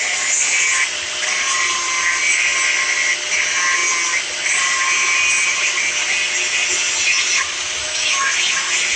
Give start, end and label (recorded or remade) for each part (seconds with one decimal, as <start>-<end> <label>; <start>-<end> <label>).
0.0-7.8 recorded; 7.8-8.3 remade; 8.3-9.0 recorded